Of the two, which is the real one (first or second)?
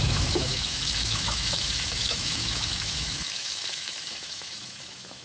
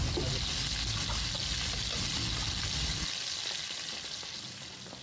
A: second